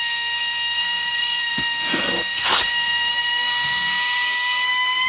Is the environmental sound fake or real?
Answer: fake